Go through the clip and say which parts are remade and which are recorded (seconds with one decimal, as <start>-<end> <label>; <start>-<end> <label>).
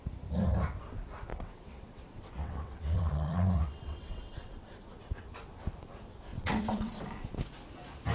0.0-1.3 recorded; 1.3-5.2 remade; 5.2-6.3 recorded; 6.3-7.0 remade; 7.0-8.1 recorded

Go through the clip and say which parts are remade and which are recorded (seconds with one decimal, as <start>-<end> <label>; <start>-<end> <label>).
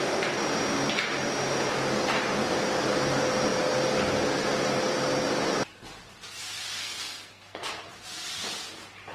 0.0-6.8 recorded; 6.8-7.9 remade; 7.9-9.1 recorded